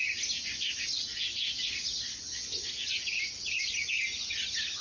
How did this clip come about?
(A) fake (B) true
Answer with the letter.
B